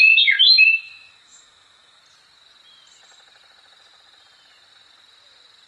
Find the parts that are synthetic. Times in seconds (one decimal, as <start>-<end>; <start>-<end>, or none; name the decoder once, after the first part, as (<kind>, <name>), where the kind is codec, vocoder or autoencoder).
0.4-2.0 (autoencoder, DAC-VAE)